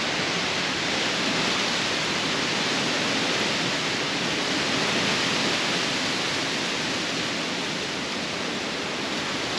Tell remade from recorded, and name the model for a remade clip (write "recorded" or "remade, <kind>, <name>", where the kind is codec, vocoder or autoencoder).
recorded